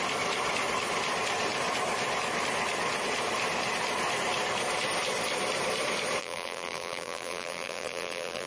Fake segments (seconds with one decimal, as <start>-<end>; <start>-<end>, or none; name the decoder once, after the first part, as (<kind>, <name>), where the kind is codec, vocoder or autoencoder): 6.2-8.5 (vocoder, BigVGAN v2)